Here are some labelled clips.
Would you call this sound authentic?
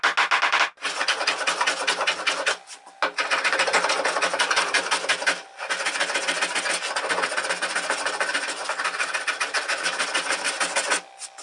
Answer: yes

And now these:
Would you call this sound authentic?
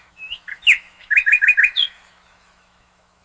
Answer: no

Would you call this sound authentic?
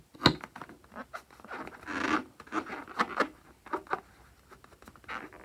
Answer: yes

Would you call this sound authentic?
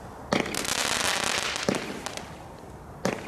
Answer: yes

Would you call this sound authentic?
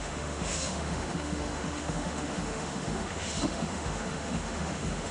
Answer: no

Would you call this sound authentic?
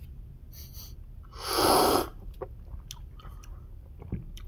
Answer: yes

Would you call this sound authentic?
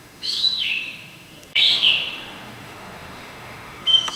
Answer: no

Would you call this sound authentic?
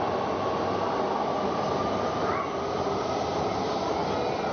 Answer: yes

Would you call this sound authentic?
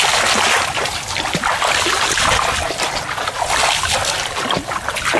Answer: yes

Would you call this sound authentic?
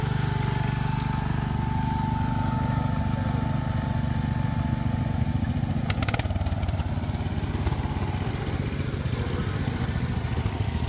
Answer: yes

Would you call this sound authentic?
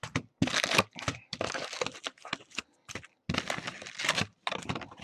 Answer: yes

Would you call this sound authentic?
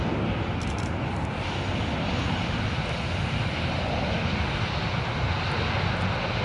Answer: yes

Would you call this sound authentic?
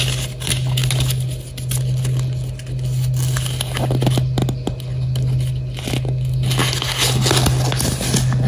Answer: yes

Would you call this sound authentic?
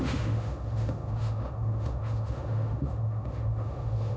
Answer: no